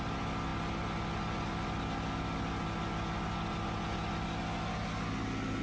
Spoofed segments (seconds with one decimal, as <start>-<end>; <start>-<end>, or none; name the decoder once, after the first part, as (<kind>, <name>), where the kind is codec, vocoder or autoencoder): none